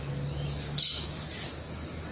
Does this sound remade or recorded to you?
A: recorded